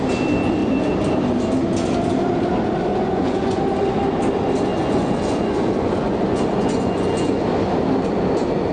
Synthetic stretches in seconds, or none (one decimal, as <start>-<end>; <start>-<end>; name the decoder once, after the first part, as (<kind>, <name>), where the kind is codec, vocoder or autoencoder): 2.9-3.6 (vocoder, Vocos); 4.7-7.4

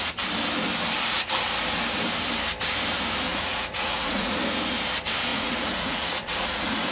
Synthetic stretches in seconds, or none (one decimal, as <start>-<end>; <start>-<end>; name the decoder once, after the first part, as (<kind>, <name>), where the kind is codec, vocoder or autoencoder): 3.3-4.4 (vocoder, Vocos); 5.3-6.9

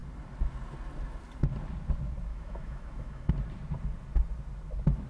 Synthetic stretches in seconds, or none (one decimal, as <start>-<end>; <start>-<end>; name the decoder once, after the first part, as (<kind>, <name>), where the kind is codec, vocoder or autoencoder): 2.3-3.3 (autoencoder, DAC-VAE)

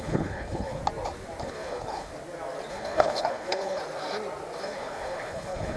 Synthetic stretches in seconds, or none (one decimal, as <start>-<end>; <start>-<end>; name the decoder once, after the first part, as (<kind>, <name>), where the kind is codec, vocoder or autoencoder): 0.0-0.8 (codec, HILCodec); 1.4-2.1; 2.7-3.8; 4.6-5.8

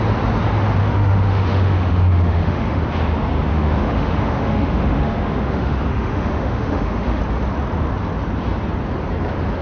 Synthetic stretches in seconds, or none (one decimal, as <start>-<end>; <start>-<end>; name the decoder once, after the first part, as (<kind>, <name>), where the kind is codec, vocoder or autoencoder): 0.8-2.8 (autoencoder, DAC-VAE); 3.5-7.2